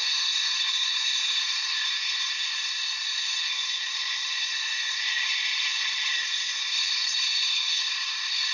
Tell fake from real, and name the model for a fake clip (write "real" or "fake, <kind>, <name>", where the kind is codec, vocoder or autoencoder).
fake, codec, SNAC